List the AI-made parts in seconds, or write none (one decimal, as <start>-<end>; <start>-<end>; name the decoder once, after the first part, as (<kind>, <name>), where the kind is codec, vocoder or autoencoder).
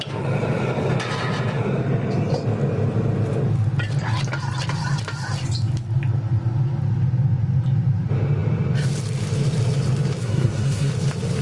10.2-10.9 (codec, SNAC)